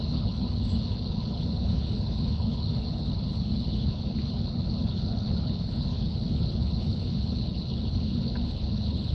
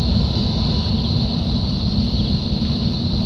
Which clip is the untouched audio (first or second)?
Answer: second